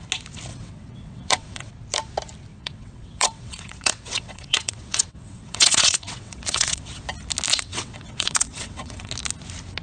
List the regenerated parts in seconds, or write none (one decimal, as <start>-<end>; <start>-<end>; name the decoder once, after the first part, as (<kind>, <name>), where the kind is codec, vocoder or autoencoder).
0.5-1.7 (vocoder, WaveNeXt); 2.5-7.0; 7.5-9.1